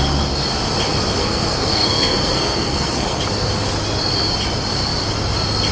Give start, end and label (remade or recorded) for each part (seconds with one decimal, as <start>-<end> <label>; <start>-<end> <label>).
0.0-1.2 recorded; 1.2-3.2 remade; 3.2-5.7 recorded